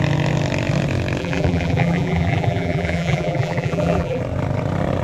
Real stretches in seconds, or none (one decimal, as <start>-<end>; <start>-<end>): 0.0-1.2; 4.2-5.0